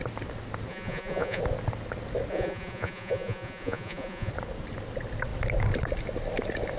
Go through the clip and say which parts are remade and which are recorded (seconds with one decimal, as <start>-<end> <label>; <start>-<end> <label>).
0.0-0.7 recorded; 0.7-1.4 remade; 1.4-2.3 recorded; 2.3-4.3 remade; 4.3-6.8 recorded